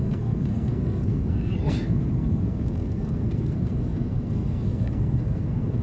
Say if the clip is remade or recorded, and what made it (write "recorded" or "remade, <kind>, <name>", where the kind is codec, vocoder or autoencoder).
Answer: remade, codec, SNAC